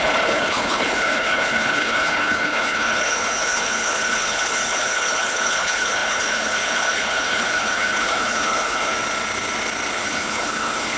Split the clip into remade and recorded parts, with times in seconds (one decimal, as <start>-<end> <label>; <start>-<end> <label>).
0.0-8.9 remade; 8.9-9.9 recorded; 9.9-11.0 remade